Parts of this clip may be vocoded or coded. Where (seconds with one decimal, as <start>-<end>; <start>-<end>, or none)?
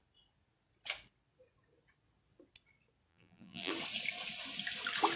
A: 3.1-3.7